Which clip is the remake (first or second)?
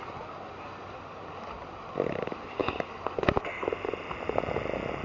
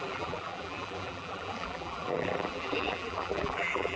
second